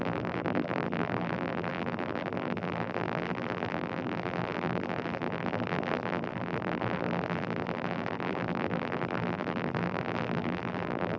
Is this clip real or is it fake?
fake